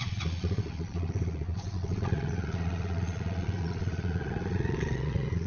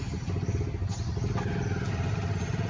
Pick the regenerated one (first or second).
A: first